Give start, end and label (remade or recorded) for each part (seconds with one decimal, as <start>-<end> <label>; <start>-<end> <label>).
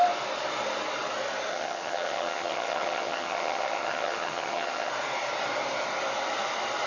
0.0-1.5 recorded; 1.5-4.9 remade; 4.9-6.9 recorded